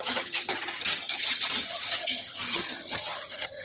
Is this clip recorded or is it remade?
remade